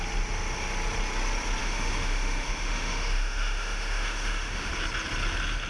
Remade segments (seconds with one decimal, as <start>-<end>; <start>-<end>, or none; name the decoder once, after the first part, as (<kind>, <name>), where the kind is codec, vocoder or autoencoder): 1.6-4.7 (autoencoder, DAC-VAE)